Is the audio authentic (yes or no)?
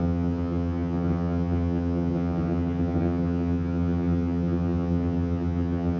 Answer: no